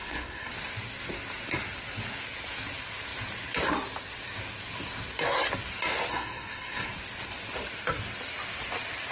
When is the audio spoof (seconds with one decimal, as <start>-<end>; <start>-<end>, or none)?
0.0-0.5; 6.1-6.9

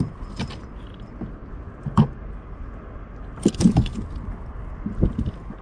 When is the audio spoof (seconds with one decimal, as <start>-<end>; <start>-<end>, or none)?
none

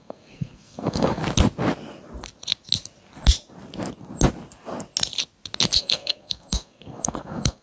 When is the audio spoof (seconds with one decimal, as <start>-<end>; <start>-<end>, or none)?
0.0-1.2; 5.8-7.6

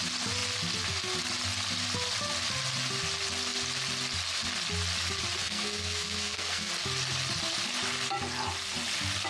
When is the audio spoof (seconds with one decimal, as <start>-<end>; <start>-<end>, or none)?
5.4-6.7

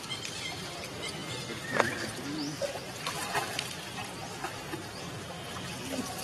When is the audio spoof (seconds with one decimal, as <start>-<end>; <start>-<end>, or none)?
none

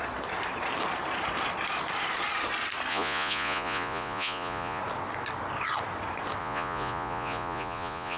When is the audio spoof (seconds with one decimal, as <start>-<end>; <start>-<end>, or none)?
2.9-4.8; 6.4-8.2